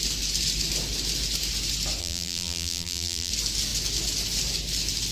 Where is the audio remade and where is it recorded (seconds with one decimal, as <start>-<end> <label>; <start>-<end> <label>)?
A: 0.0-2.0 recorded; 2.0-3.3 remade; 3.3-5.1 recorded

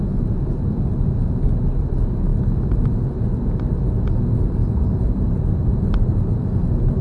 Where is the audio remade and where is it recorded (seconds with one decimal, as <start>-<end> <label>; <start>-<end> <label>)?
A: 0.0-4.6 recorded; 4.6-5.7 remade; 5.7-7.0 recorded

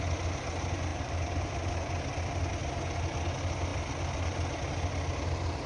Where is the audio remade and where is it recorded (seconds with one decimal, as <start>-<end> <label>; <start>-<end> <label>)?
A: 0.0-0.9 recorded; 0.9-1.4 remade; 1.4-5.7 recorded

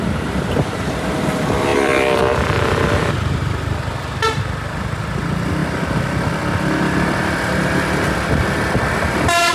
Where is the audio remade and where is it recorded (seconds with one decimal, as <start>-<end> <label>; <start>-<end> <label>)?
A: 0.0-1.7 recorded; 1.7-2.2 remade; 2.2-9.5 recorded